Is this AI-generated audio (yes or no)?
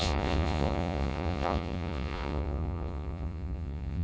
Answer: yes